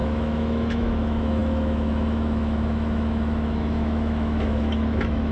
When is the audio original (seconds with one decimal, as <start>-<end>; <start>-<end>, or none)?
none